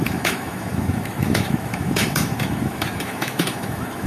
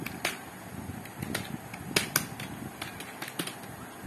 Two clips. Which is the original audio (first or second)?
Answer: second